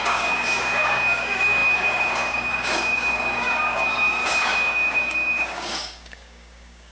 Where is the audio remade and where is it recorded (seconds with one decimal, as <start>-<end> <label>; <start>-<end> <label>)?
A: 0.0-6.9 remade